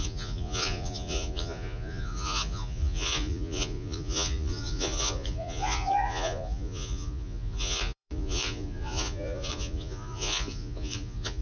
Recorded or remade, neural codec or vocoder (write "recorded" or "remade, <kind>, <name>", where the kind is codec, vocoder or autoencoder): remade, vocoder, Vocos